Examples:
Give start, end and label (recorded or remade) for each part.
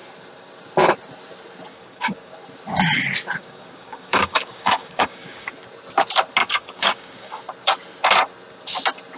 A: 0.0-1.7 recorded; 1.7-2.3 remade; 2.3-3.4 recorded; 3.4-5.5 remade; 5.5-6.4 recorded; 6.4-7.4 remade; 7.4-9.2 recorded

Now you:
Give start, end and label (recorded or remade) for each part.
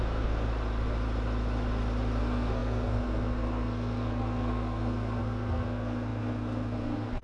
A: 0.0-0.5 remade; 0.5-2.2 recorded; 2.2-7.2 remade